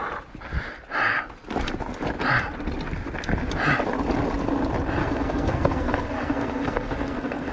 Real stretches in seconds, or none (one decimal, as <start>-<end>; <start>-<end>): 0.0-5.0